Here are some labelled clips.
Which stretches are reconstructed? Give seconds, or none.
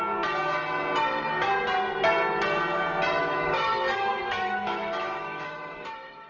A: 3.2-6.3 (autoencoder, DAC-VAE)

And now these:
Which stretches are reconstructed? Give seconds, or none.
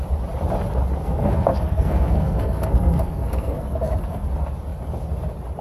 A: 1.0-4.3 (codec, SNAC)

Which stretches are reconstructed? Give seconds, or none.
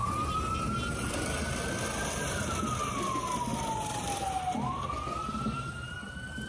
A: none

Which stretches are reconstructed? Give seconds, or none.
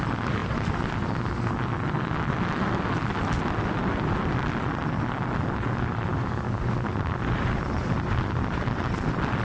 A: 6.1-7.0 (codec, DAC)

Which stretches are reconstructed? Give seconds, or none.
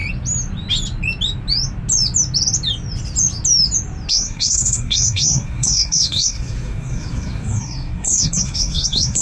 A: 4.1-9.2 (codec, SNAC)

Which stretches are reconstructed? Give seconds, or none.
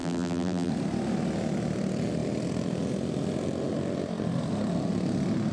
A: 0.0-0.7 (vocoder, BigVGAN v2)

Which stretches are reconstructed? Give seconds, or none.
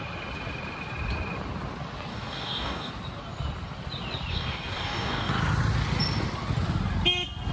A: 2.1-2.9 (codec, DAC); 4.3-5.3